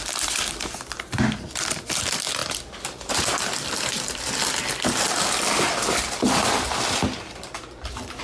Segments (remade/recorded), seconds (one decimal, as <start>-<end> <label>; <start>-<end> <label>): 0.0-8.2 remade

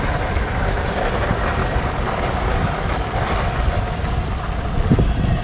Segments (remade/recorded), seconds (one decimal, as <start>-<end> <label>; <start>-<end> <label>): 0.0-1.6 recorded; 1.6-2.9 remade; 2.9-5.4 recorded